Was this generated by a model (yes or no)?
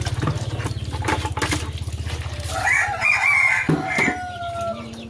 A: no